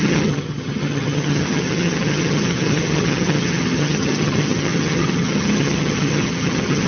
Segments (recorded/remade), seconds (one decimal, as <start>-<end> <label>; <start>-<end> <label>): 0.0-6.9 remade